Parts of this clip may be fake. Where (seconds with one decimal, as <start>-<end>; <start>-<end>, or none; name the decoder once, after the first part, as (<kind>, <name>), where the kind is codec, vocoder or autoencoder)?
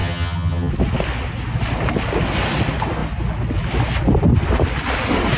0.0-0.7 (vocoder, HiFi-GAN)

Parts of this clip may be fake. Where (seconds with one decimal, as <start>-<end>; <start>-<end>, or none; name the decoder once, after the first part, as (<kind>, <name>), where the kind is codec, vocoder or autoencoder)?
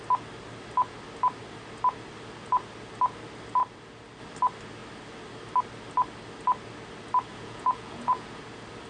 7.3-8.4 (vocoder, Vocos)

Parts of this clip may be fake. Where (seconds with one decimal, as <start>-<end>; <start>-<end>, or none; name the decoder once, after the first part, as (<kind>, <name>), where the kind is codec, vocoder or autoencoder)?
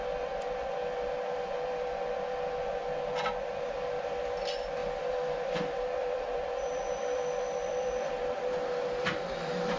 4.8-7.9 (vocoder, BigVGAN v2)